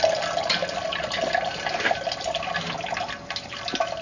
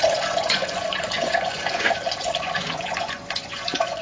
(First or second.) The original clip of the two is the first